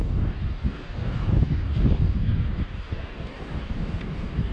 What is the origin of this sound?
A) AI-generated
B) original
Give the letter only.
A